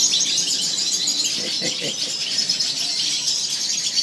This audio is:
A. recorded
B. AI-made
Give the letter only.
A